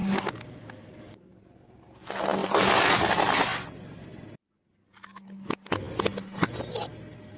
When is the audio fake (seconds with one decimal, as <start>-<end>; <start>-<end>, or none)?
0.0-1.4